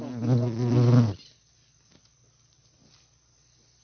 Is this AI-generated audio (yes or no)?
no